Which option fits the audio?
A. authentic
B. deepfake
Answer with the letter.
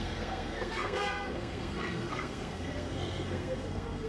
B